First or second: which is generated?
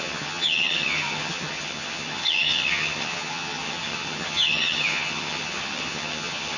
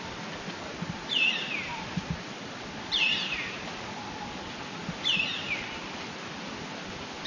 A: first